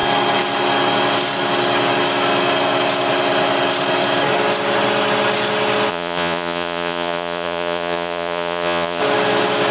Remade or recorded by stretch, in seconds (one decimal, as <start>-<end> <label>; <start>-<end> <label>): 0.0-5.9 recorded; 5.9-9.0 remade; 9.0-9.7 recorded